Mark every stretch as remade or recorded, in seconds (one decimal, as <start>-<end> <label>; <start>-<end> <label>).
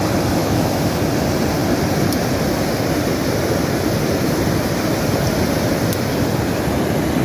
0.0-0.4 recorded; 0.4-1.0 remade; 1.0-7.2 recorded